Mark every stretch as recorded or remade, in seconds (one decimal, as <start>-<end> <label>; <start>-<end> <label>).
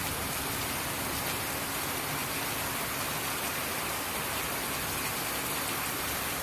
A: 0.0-6.4 recorded